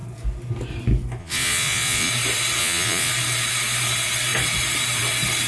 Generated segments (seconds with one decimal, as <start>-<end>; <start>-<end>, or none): 1.2-2.1; 2.6-3.1